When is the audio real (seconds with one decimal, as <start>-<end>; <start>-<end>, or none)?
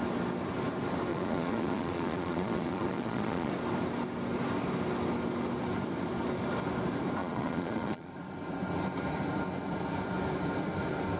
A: 0.0-1.1; 3.5-7.2; 8.1-11.2